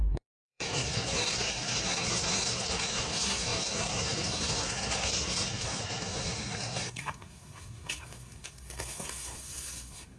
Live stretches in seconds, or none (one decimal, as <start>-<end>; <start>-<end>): none

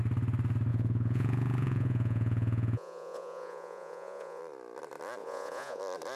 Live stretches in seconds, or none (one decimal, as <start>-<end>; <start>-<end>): 0.0-0.7; 4.4-5.2; 5.8-6.2

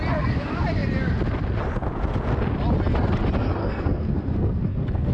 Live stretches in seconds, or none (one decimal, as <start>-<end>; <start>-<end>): 0.0-3.6

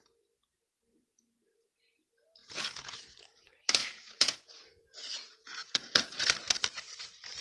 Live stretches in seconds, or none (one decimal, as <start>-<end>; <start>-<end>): 0.0-2.4; 3.0-3.8; 6.2-7.4